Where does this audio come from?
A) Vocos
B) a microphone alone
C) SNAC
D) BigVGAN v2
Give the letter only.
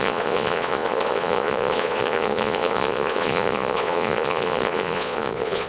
A